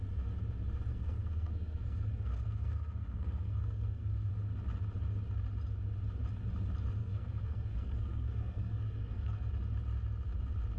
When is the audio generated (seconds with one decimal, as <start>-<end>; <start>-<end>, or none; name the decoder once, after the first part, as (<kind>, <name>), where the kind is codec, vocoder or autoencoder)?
0.9-4.3 (codec, SNAC); 7.0-9.5